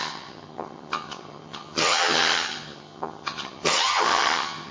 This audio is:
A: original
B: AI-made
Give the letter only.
B